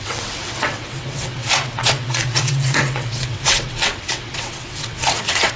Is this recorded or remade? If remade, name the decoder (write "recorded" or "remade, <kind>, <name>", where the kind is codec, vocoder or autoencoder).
remade, vocoder, WaveNeXt